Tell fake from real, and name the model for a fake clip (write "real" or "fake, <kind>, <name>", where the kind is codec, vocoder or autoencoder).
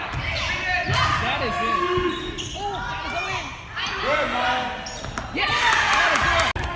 real